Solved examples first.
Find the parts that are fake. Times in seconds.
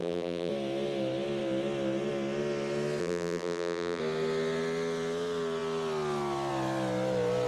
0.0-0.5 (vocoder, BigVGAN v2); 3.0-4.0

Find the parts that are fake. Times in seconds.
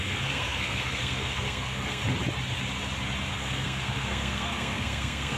0.0-2.0 (codec, SNAC); 3.3-5.4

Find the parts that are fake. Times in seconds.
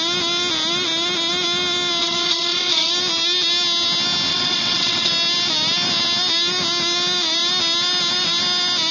2.0-2.9 (vocoder, WaveNeXt); 4.3-5.1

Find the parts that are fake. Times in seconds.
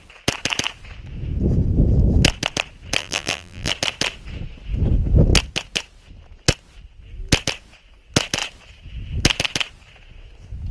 3.0-3.7 (vocoder, BigVGAN v2)